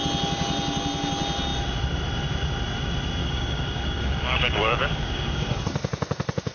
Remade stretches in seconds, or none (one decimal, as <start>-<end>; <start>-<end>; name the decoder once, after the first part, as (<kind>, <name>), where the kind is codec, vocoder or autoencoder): 3.2-5.6 (codec, DAC)